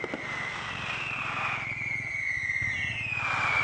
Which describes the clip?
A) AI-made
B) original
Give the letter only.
B